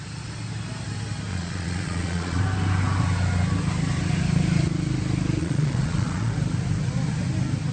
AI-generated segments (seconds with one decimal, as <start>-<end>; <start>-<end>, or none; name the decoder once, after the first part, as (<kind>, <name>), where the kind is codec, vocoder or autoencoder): 1.3-2.4 (vocoder, Vocos); 5.4-6.3